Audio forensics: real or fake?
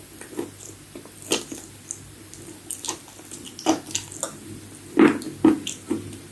real